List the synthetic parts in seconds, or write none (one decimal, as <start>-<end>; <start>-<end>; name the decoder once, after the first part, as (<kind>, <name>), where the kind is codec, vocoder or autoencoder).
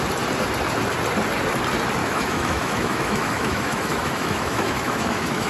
2.0-5.5 (autoencoder, DAC-VAE)